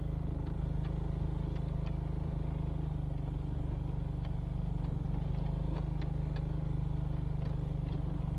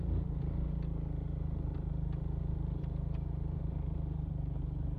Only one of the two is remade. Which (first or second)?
second